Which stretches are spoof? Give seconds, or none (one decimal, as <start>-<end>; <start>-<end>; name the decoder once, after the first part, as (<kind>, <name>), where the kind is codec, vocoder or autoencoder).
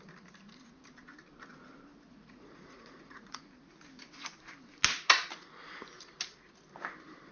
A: 1.9-3.4 (vocoder, Vocos)